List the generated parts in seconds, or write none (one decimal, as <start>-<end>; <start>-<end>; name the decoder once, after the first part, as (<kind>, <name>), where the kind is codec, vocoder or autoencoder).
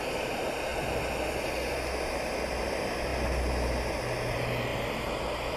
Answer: none